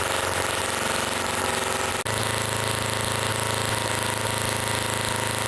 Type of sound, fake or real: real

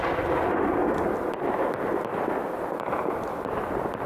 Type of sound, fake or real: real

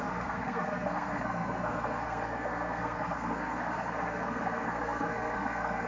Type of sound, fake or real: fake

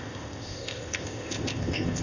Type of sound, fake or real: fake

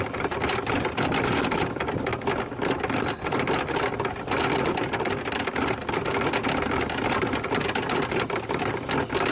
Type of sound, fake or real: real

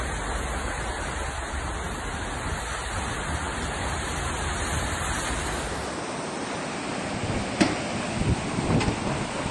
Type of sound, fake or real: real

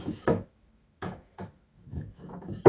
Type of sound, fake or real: fake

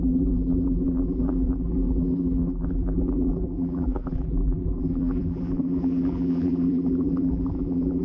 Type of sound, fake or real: fake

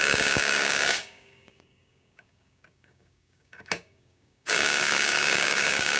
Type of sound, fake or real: fake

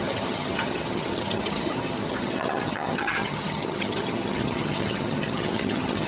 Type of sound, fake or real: fake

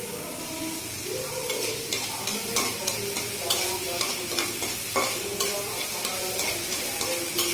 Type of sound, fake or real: real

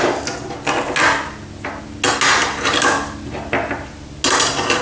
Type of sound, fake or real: real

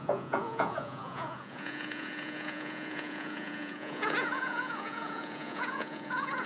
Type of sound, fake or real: fake